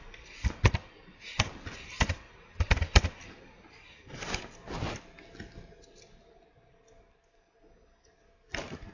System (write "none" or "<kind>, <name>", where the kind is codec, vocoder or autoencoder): none